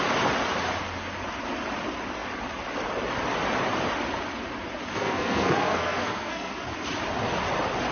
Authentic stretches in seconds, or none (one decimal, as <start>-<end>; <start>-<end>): 0.0-4.9; 6.6-7.9